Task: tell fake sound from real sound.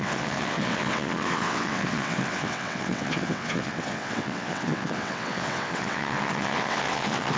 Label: fake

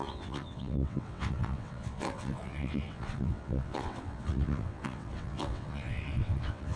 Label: fake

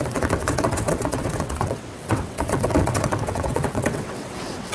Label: fake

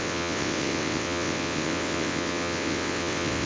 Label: fake